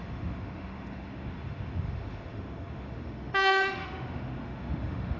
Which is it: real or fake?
fake